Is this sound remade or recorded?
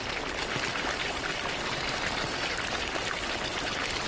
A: recorded